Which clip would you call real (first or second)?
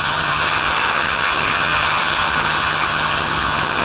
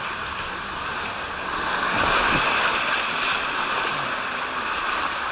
second